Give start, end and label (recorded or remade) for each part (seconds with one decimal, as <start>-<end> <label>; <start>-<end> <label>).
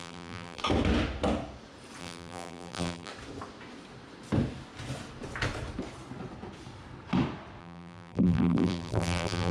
0.0-0.6 remade; 0.6-2.0 recorded; 2.0-3.1 remade; 3.1-7.6 recorded; 7.6-9.5 remade